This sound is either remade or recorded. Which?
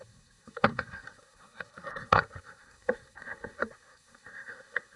remade